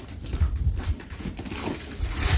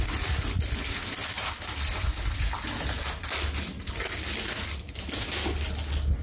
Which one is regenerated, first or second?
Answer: first